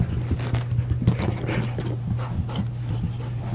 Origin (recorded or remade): recorded